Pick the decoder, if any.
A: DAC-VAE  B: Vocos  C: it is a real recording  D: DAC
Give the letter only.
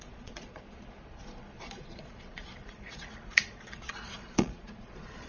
B